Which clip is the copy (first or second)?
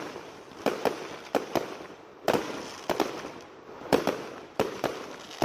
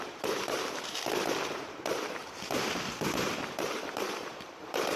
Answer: second